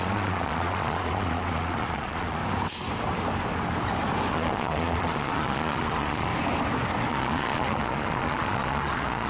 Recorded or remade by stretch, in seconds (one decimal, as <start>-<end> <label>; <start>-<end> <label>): 0.0-2.4 remade; 2.4-4.3 recorded; 4.3-6.3 remade; 6.3-7.1 recorded; 7.1-9.3 remade